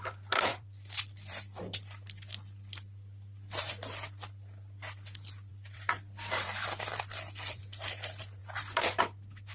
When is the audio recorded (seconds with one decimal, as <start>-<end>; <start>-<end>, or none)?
0.0-0.5; 1.6-5.5; 7.6-9.5